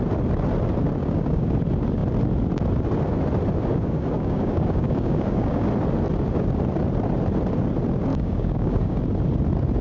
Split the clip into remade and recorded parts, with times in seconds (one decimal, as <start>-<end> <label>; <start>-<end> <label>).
0.0-1.0 recorded; 1.0-1.6 remade; 1.6-3.7 recorded; 3.7-5.7 remade; 5.7-8.1 recorded; 8.1-9.0 remade; 9.0-9.8 recorded